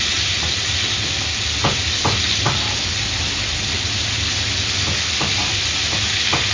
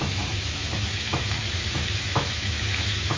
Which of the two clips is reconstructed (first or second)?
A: second